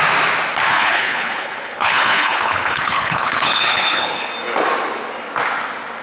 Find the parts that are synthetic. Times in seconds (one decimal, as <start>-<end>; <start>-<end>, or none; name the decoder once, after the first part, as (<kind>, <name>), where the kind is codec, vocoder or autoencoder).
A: 0.7-4.3 (codec, HILCodec)